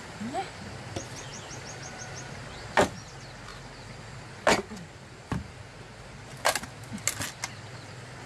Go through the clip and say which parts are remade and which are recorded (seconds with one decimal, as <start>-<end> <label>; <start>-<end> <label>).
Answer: 0.0-8.3 recorded